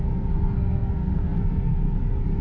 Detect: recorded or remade remade